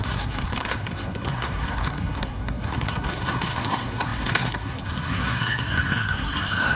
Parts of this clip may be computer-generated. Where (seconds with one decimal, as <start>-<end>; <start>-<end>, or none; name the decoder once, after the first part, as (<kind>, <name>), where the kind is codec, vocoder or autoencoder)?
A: 0.0-6.8 (codec, SNAC)

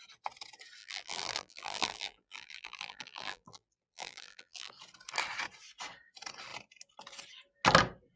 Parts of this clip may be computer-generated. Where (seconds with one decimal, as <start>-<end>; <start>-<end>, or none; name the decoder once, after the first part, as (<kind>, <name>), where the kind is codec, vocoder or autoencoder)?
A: 0.8-4.7 (vocoder, BigVGAN v2)

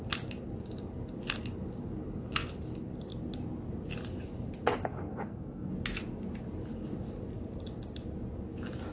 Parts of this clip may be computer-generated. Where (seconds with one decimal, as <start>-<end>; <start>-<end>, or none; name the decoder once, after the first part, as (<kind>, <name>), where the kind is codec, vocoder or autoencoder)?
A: 4.8-5.7 (codec, SNAC)